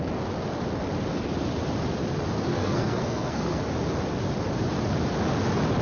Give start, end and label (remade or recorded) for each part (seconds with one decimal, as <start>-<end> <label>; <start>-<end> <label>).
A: 0.0-2.5 recorded; 2.5-3.6 remade; 3.6-5.8 recorded